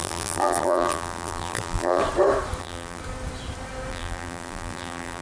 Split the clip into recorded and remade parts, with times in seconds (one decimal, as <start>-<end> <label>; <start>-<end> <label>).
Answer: 0.0-2.0 remade; 2.0-2.6 recorded; 2.6-3.0 remade; 3.0-3.9 recorded; 3.9-5.2 remade